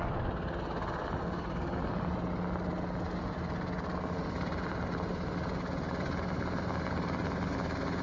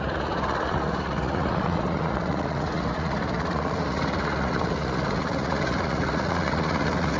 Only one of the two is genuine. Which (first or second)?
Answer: first